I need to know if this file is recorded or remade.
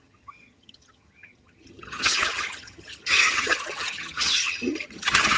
remade